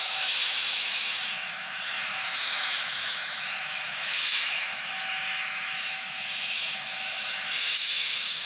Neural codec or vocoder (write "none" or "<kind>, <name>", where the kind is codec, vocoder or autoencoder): autoencoder, DAC-VAE